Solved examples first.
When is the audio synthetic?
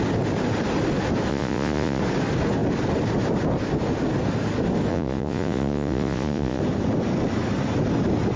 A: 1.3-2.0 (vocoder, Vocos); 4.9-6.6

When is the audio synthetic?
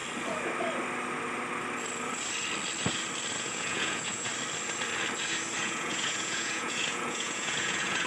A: 3.4-4.3 (vocoder, Vocos); 5.6-8.1